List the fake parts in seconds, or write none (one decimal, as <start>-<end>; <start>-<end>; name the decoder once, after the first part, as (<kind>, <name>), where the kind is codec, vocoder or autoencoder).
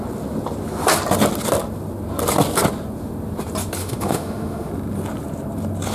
3.8-4.7 (autoencoder, DAC-VAE)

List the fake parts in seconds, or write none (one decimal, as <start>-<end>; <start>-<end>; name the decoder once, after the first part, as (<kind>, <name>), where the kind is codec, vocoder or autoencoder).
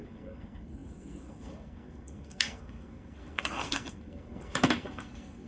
0.0-5.5 (codec, SNAC)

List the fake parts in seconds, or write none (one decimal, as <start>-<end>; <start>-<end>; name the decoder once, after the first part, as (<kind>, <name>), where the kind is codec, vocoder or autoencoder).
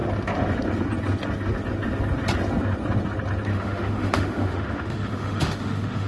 3.5-6.1 (autoencoder, DAC-VAE)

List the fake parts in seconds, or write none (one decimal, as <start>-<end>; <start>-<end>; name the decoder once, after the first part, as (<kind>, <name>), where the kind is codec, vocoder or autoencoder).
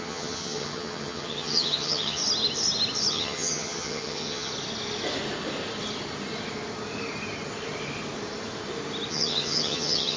0.0-2.2 (vocoder, HiFi-GAN); 3.1-4.5; 9.1-10.2